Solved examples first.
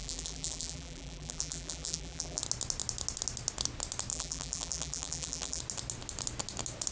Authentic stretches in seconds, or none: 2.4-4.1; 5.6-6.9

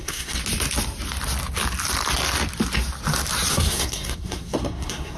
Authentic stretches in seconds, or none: 0.4-3.5

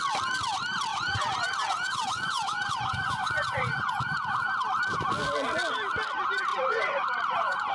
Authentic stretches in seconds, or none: 0.0-0.9; 4.0-6.5